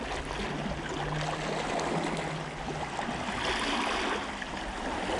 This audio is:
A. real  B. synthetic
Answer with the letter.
A